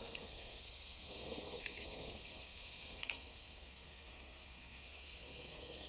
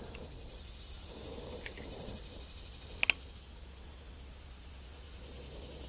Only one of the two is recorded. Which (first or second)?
second